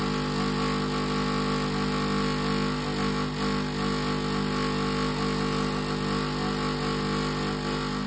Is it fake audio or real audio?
real